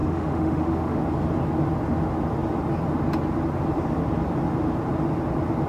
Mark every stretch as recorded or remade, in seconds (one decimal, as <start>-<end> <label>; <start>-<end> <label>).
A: 0.0-1.0 remade; 1.0-5.7 recorded